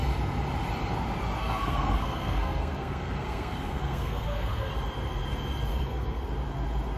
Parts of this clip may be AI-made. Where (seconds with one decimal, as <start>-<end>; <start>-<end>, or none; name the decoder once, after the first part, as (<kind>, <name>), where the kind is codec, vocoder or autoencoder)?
1.4-4.7 (codec, SNAC); 5.7-6.3